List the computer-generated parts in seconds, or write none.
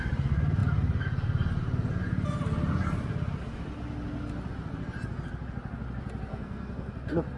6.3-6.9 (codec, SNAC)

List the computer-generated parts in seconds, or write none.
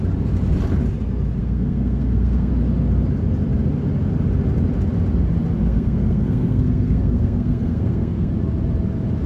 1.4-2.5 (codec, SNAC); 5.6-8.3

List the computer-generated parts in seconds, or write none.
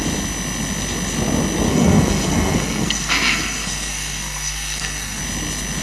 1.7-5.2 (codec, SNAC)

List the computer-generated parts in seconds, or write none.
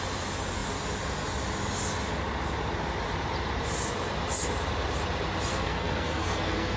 5.5-6.8 (codec, SNAC)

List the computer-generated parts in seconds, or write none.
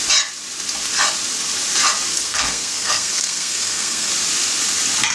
2.1-4.1 (codec, SNAC)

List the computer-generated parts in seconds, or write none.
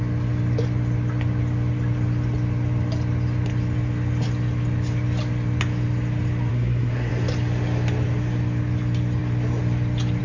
6.5-7.1 (codec, SNAC)